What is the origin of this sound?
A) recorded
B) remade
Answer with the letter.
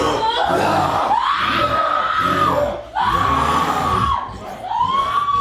A